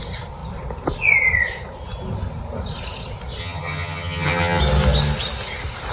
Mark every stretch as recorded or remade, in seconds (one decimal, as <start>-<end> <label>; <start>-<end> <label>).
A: 0.0-3.4 recorded; 3.4-4.6 remade; 4.6-5.9 recorded